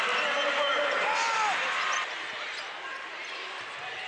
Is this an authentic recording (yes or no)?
yes